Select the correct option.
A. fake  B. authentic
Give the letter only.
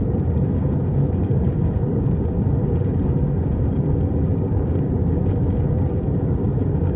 A